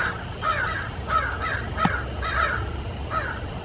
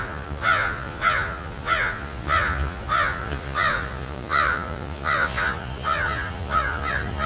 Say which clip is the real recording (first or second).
first